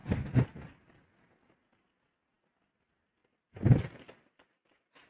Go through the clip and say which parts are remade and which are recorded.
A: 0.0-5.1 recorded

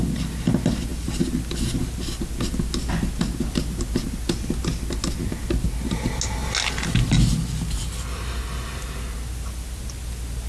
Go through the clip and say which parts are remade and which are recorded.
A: 0.0-10.5 recorded

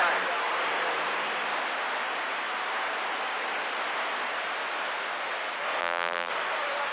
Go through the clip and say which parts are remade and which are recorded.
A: 0.0-5.8 recorded; 5.8-6.3 remade; 6.3-6.9 recorded